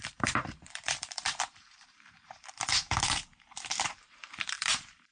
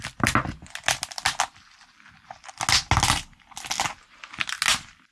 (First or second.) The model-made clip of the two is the first